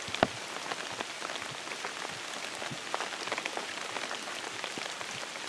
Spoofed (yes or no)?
no